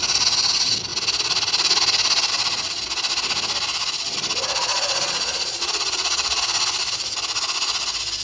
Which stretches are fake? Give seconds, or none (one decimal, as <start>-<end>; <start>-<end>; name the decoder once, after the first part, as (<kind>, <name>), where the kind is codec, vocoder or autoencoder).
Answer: 4.7-6.4 (vocoder, Vocos)

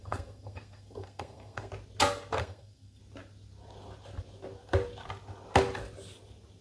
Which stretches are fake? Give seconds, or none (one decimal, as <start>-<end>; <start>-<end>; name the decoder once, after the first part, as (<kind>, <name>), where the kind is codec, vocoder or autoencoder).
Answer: 0.0-1.7 (codec, SNAC); 2.4-3.0

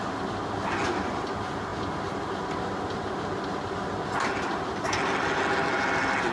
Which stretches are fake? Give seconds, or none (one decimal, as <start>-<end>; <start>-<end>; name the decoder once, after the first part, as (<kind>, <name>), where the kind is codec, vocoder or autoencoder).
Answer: none

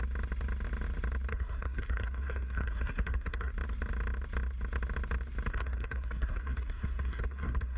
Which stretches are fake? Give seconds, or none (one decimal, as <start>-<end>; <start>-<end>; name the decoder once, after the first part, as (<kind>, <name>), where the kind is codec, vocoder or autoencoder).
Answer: 1.3-3.5 (codec, SNAC); 5.5-7.8

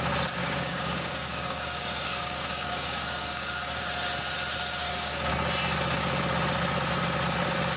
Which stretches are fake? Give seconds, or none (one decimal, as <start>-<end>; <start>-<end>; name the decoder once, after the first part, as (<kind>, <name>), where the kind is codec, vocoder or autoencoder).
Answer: 0.4-3.8 (codec, DAC); 4.8-5.3